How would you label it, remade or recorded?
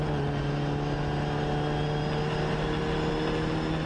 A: recorded